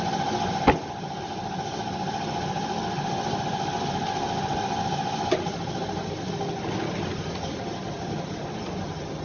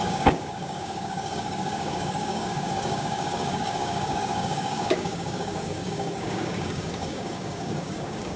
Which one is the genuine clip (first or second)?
first